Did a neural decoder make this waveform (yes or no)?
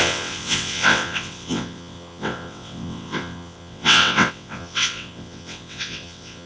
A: yes